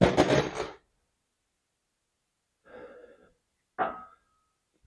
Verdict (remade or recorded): recorded